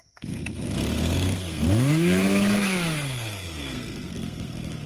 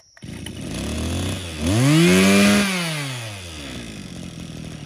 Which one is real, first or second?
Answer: second